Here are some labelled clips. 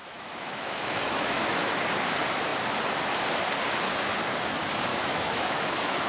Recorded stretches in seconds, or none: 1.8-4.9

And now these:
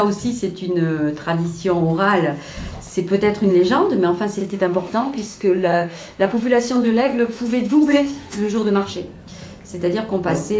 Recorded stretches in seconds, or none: 0.0-4.4; 8.9-10.6

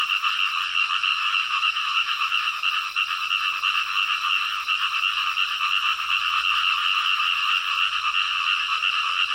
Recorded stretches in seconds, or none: 0.0-1.1; 2.7-9.3

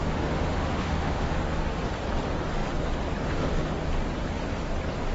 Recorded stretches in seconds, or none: 1.8-5.1